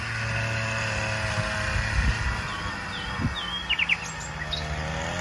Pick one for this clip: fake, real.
real